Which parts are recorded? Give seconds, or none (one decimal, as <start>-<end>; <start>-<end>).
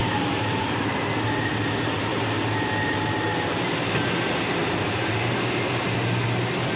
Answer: 0.8-2.1; 5.2-6.8